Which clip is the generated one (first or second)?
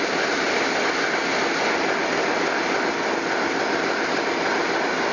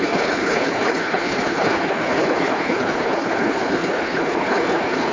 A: second